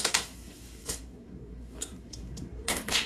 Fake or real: fake